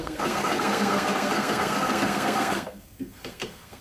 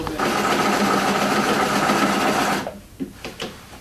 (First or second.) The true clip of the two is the second